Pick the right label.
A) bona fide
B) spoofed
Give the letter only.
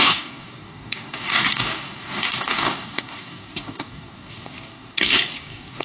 B